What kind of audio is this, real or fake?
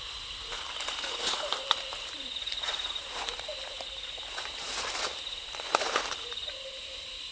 fake